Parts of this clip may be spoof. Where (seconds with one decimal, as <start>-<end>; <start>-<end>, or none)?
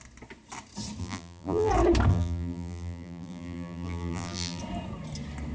1.0-1.7; 2.1-4.6